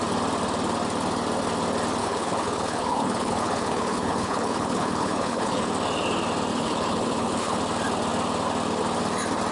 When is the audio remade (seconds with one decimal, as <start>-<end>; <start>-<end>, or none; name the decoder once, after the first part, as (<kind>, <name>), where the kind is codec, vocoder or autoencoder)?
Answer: 2.0-5.7 (codec, HILCodec); 6.5-7.6